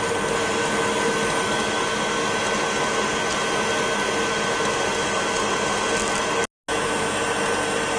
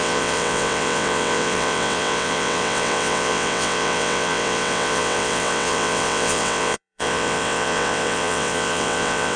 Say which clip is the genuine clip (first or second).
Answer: first